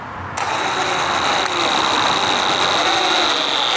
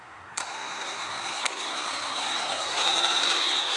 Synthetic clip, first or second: second